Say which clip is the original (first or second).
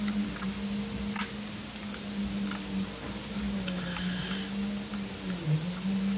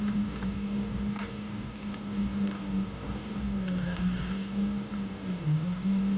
first